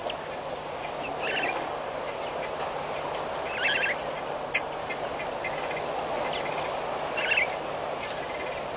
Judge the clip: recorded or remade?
recorded